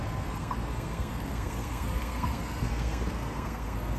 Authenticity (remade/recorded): remade